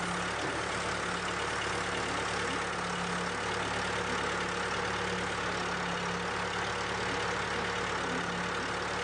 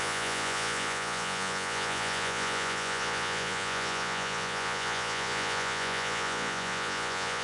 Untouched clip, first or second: first